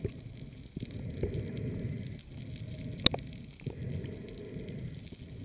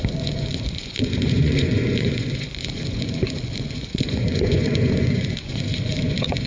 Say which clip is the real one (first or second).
first